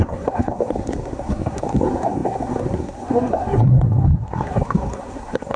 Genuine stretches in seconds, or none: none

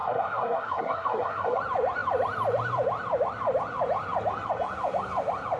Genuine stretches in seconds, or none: 1.6-5.6

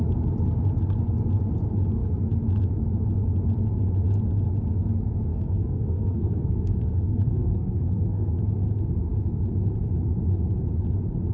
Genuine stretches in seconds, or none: 0.0-5.3; 8.3-11.3

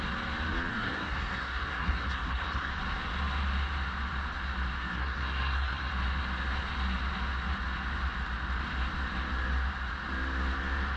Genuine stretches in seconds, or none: 0.0-0.7; 2.7-4.9; 5.9-11.0